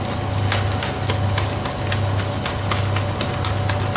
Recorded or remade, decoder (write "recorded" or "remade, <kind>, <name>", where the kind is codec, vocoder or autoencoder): recorded